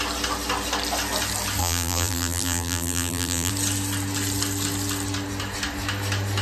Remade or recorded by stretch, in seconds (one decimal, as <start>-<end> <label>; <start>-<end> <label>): 0.0-1.6 recorded; 1.6-3.5 remade; 3.5-6.4 recorded